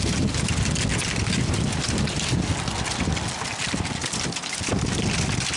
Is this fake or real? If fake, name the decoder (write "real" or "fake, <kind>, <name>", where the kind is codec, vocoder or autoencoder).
real